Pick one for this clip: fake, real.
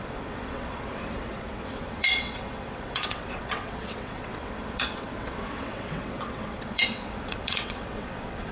fake